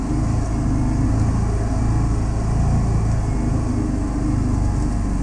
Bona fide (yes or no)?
yes